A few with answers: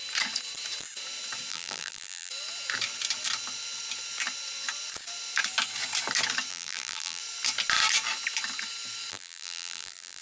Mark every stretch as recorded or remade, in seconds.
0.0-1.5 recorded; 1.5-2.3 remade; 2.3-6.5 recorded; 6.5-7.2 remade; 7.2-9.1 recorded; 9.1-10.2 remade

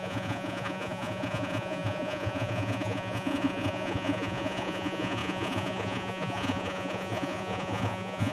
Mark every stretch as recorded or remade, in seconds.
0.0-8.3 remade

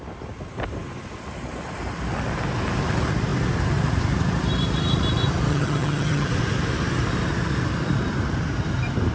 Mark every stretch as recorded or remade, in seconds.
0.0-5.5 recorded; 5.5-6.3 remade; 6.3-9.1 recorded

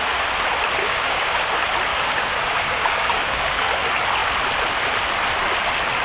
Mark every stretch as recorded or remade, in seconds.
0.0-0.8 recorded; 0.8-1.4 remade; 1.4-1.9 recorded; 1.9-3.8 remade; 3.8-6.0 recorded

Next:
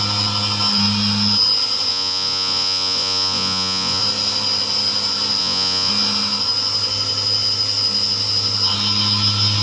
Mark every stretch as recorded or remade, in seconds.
0.0-1.9 recorded; 1.9-4.0 remade; 4.0-5.4 recorded; 5.4-5.9 remade; 5.9-9.6 recorded

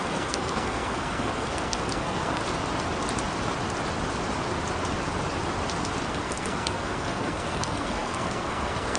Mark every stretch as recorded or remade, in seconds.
0.0-2.4 remade; 2.4-6.1 recorded; 6.1-9.0 remade